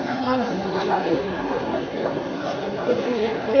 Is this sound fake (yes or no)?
yes